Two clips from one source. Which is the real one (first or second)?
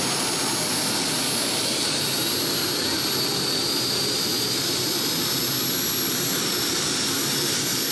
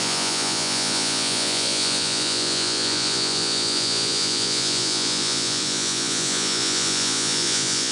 first